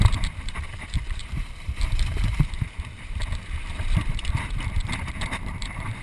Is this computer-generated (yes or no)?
yes